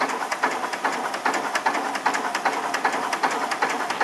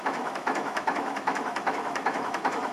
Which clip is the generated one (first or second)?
second